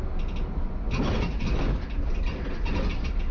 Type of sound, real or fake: real